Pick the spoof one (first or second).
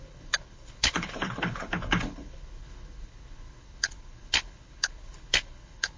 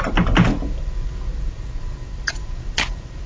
first